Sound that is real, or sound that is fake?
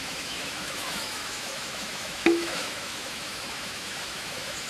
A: fake